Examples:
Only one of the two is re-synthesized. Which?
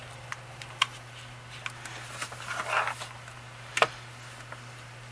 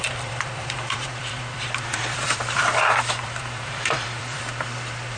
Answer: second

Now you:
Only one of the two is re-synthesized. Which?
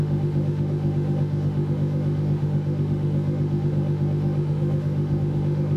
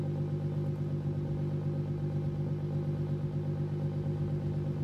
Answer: first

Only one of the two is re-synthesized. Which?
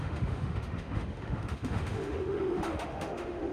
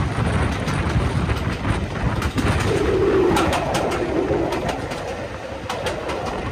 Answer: first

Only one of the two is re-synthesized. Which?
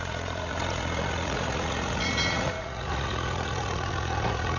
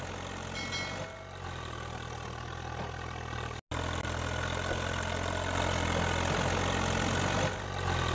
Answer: first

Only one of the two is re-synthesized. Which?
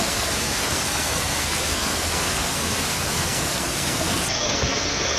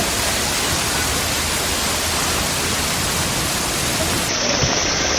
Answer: first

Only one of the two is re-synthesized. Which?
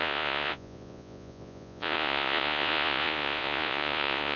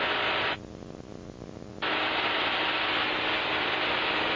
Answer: first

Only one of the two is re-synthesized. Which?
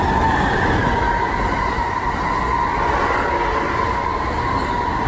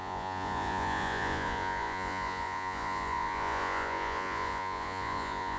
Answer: second